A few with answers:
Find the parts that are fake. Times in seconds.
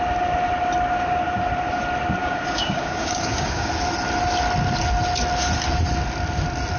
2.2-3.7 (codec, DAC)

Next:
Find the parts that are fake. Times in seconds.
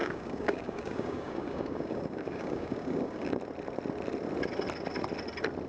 0.0-3.4 (codec, DAC)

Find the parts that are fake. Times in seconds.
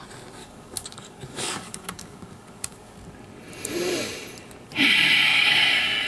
0.4-2.9 (codec, DAC); 5.3-6.1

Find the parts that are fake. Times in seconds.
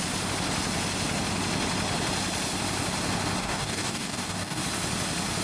3.4-4.6 (codec, DAC)